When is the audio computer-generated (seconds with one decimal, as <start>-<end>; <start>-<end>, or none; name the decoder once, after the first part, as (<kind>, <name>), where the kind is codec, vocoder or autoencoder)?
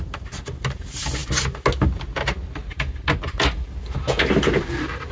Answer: none